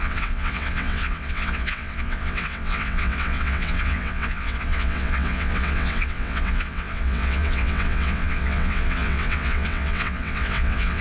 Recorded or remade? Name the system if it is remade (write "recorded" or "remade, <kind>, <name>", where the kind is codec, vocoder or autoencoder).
remade, vocoder, WaveNeXt